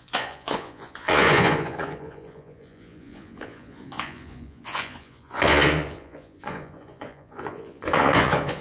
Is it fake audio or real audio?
fake